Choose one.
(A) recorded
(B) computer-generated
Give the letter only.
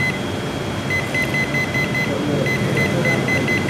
A